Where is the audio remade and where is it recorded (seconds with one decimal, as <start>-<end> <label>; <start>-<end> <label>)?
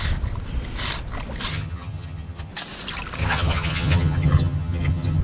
0.0-1.5 recorded; 1.5-2.5 remade; 2.5-3.2 recorded; 3.2-5.2 remade